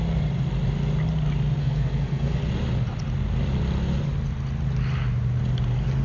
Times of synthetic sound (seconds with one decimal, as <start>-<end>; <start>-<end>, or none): 1.6-2.4